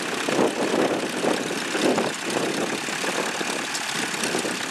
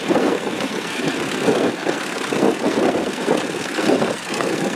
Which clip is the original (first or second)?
first